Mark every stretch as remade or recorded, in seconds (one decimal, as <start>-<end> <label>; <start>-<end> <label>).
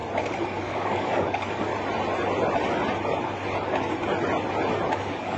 0.0-0.6 recorded; 0.6-1.7 remade; 1.7-4.9 recorded; 4.9-5.4 remade